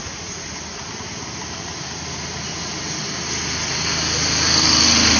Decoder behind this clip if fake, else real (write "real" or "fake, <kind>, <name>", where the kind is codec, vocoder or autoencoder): real